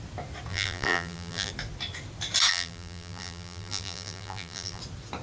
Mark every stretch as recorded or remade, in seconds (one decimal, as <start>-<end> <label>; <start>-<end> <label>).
0.0-0.5 recorded; 0.5-1.5 remade; 1.5-2.5 recorded; 2.5-4.8 remade; 4.8-5.2 recorded